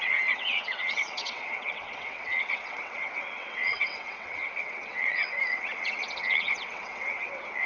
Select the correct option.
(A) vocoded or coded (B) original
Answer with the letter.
A